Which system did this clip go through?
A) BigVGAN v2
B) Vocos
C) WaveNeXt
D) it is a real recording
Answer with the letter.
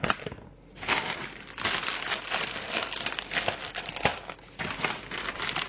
D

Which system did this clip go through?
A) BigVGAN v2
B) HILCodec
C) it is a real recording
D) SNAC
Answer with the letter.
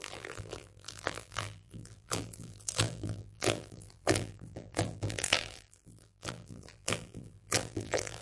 A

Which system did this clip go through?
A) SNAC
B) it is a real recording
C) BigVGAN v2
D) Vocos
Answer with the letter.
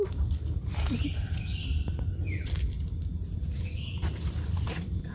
C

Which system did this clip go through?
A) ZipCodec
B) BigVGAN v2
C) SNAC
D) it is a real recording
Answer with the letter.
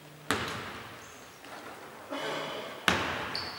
D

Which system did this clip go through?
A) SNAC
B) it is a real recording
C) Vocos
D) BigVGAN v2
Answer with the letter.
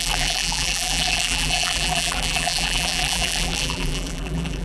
D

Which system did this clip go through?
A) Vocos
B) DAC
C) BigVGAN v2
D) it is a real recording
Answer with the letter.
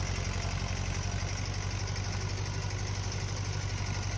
D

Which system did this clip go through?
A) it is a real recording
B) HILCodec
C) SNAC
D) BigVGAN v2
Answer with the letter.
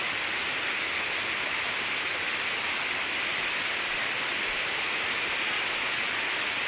A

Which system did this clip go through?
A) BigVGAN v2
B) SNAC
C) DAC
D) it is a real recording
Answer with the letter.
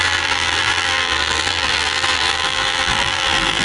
A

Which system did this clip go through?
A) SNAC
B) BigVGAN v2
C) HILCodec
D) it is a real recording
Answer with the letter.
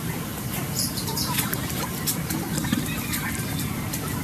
B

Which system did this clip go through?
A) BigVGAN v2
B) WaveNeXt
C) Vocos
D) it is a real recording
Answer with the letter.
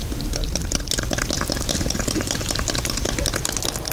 D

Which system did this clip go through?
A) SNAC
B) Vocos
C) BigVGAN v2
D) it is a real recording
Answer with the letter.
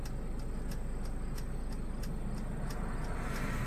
D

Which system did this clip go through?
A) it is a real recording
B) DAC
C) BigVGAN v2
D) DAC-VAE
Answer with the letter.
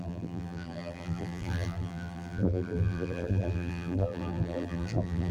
C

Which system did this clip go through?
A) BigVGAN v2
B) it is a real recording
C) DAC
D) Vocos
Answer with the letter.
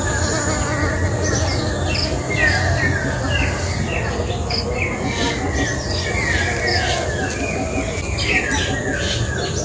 B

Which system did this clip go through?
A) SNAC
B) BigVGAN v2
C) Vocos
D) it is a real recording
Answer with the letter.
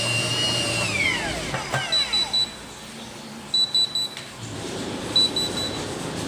D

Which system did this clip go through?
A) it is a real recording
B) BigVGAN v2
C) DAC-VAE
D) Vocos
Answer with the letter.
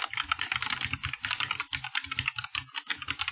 A